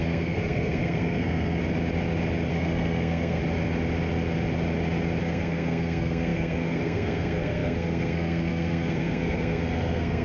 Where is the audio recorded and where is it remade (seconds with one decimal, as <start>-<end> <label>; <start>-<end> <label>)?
0.0-1.6 remade; 1.6-2.5 recorded; 2.5-3.4 remade; 3.4-5.2 recorded; 5.2-10.2 remade